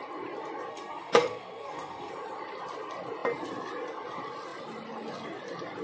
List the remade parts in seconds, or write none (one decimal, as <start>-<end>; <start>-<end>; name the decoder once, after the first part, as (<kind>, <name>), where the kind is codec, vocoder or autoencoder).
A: 0.7-2.1 (codec, SNAC)